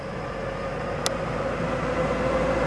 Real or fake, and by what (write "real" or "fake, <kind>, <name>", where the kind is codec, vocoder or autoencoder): real